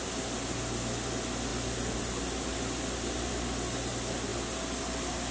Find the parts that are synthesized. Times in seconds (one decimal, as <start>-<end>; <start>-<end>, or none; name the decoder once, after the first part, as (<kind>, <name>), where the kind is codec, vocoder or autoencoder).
none